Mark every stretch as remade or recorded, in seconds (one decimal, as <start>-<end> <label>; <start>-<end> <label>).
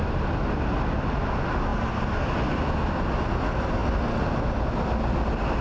0.0-5.6 recorded